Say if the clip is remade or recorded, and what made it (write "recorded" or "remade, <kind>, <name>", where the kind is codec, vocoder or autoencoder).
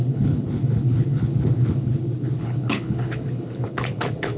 remade, codec, HILCodec